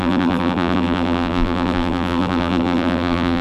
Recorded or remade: remade